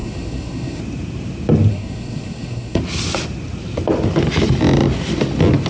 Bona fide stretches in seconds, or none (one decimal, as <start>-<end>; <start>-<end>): 0.8-1.7; 2.8-5.7

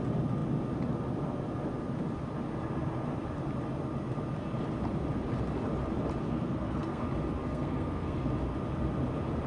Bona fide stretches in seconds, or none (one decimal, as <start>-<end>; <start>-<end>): 0.0-6.2; 7.0-7.4; 8.3-9.5

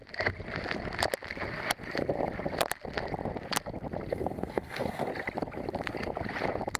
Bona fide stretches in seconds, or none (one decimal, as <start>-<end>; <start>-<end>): 0.0-4.1; 5.1-6.8

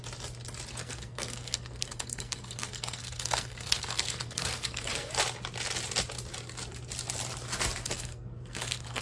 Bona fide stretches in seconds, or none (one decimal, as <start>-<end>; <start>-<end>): 0.0-0.7; 5.1-7.8

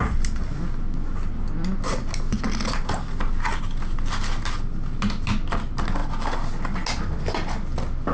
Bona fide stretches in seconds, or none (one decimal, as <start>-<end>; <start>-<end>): 0.0-8.1

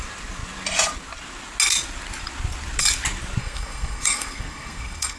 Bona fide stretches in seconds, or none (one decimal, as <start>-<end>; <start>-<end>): 0.0-3.4

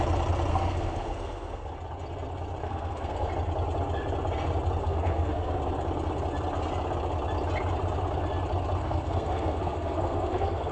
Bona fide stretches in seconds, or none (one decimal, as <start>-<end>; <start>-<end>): 0.0-0.5; 1.7-2.6; 3.3-4.8; 5.6-8.8